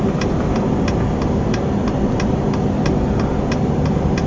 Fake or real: real